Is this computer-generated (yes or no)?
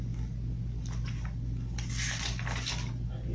no